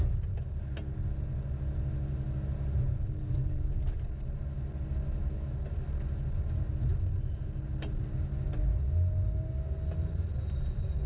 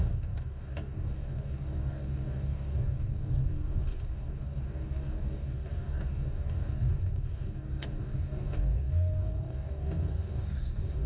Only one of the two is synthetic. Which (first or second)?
second